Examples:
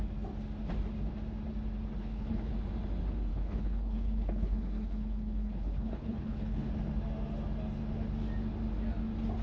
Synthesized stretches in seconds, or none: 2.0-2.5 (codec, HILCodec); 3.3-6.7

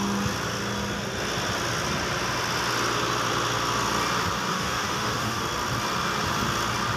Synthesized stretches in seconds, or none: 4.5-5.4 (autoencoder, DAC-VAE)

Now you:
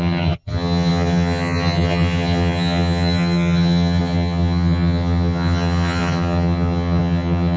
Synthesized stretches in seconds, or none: 0.0-7.6 (vocoder, HiFi-GAN)

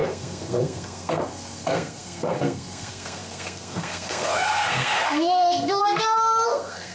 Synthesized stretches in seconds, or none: 0.0-6.9 (codec, SNAC)

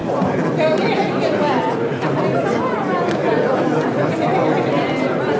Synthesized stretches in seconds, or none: none

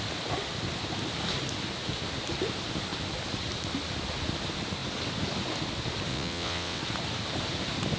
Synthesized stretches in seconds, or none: 6.1-6.8 (vocoder, WaveNeXt)

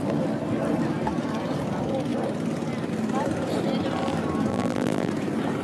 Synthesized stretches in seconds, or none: 4.5-5.1 (vocoder, BigVGAN v2)

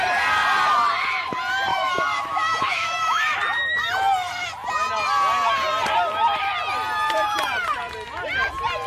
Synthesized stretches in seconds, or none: 1.7-3.2 (autoencoder, DAC-VAE)